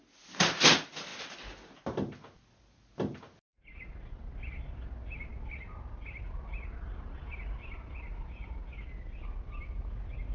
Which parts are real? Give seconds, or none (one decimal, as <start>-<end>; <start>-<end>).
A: 0.0-10.3